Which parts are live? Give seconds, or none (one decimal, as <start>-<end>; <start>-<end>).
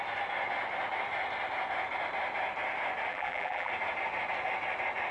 0.0-3.1; 3.7-5.1